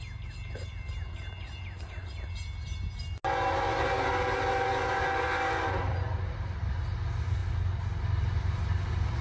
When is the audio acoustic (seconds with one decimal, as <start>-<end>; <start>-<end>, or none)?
0.0-9.2